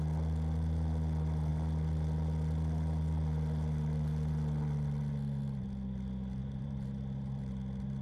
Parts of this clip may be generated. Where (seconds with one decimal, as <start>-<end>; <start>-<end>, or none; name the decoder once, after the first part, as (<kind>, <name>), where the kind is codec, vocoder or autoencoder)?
6.4-7.4 (vocoder, BigVGAN v2)